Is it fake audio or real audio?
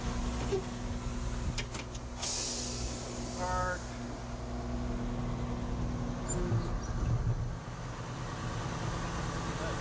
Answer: real